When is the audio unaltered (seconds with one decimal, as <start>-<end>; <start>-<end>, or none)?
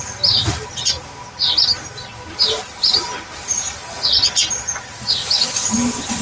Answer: 0.4-2.3; 3.8-6.2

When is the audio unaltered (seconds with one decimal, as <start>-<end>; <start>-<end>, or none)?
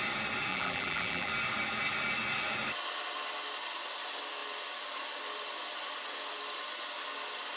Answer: 0.0-0.5; 1.3-7.6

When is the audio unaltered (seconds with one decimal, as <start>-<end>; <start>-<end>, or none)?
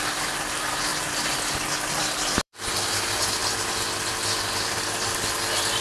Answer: none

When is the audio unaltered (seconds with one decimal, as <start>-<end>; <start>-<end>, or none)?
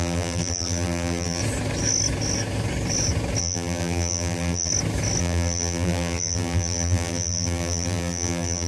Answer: 1.4-3.4; 4.7-5.2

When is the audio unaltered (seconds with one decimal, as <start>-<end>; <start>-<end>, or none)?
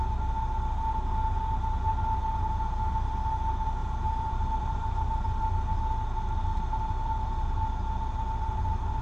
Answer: 0.0-3.8; 5.4-9.0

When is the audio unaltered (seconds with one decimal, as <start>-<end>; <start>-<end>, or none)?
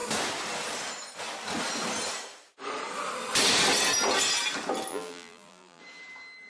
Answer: 0.0-4.9; 5.8-6.5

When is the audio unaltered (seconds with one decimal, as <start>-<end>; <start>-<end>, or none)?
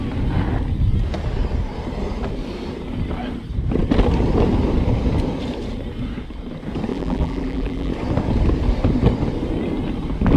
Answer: 0.0-6.9; 7.9-10.4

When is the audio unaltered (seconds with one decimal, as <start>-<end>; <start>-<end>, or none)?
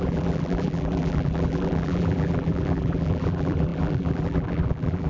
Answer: none